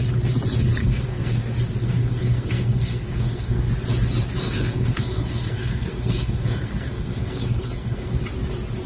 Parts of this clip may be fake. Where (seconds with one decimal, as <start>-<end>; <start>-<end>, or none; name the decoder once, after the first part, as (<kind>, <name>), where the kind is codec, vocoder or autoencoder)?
0.8-1.4 (codec, SNAC); 1.8-3.7; 4.4-8.2